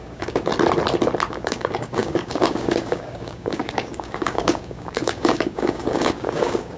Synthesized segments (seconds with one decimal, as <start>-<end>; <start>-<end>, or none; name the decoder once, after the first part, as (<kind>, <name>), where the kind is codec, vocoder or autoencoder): 0.0-0.5 (codec, DAC); 1.3-6.8

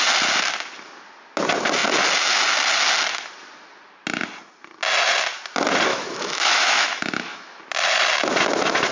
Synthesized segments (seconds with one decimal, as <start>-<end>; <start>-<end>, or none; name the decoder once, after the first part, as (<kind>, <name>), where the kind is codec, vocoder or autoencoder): 5.9-7.6 (autoencoder, DAC-VAE)

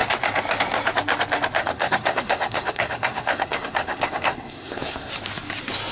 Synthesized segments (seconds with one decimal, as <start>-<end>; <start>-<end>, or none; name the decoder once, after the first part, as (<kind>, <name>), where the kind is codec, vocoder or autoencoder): 1.6-5.1 (codec, SNAC)

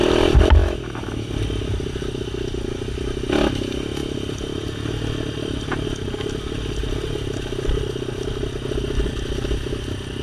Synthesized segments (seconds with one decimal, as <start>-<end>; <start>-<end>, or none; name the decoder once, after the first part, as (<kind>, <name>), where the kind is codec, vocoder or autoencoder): 0.6-1.3 (autoencoder, DAC-VAE)